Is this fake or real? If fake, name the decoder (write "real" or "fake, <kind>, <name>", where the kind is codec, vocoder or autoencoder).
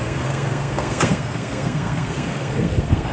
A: fake, codec, SNAC